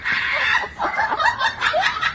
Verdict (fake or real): fake